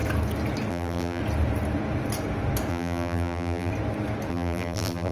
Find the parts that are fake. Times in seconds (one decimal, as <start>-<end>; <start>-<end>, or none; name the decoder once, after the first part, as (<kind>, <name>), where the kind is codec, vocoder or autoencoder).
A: 0.7-1.2 (vocoder, BigVGAN v2); 2.7-3.7; 4.3-5.1